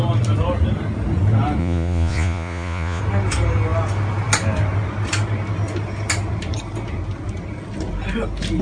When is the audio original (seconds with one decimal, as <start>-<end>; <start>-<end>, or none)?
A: 0.0-1.6; 3.0-8.6